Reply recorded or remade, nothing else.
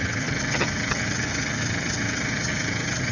remade